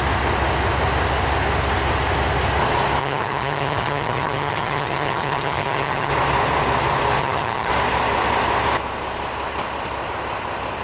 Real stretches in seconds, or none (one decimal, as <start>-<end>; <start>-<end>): 0.0-3.0; 6.1-7.2; 7.7-10.8